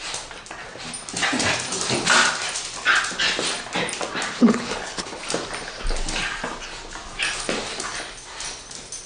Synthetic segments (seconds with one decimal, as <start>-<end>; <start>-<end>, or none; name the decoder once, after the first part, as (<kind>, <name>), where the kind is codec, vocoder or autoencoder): 4.4-5.2 (codec, HILCodec)